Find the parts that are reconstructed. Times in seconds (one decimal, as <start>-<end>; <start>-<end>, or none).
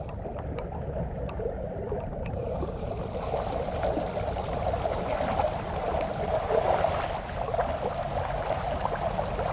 2.4-2.9